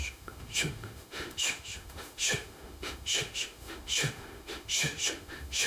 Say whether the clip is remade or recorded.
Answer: remade